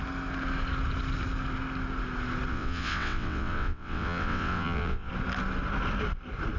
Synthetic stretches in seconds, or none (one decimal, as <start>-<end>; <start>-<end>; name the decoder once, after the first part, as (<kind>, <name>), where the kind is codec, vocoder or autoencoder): 2.5-5.1 (vocoder, WaveNeXt)